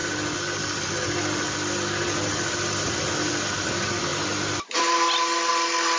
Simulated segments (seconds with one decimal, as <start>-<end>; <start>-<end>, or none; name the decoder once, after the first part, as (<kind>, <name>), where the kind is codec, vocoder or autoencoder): none